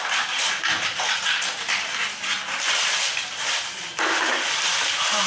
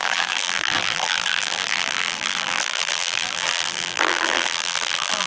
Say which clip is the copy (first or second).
second